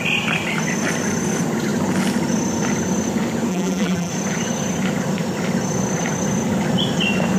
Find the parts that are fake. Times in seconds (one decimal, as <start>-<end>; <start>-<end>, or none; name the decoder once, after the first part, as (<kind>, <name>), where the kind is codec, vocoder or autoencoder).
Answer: 3.5-4.1 (vocoder, BigVGAN v2)